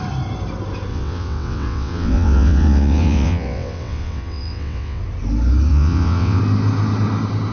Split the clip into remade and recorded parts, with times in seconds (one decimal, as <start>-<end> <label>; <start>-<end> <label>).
0.0-0.9 recorded; 0.9-5.0 remade; 5.0-5.7 recorded; 5.7-6.4 remade; 6.4-7.5 recorded